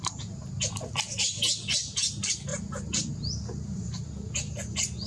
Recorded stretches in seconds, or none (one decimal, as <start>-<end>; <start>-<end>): 0.0-5.1